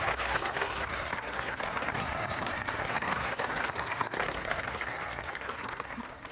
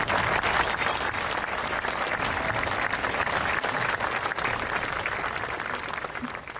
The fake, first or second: first